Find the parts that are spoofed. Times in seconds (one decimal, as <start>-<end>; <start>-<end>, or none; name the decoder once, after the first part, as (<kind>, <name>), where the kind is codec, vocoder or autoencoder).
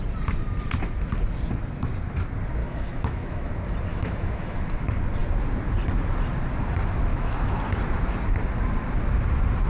2.6-3.5 (autoencoder, DAC-VAE); 3.9-4.6; 7.1-7.6